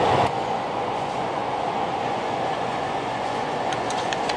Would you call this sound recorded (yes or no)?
no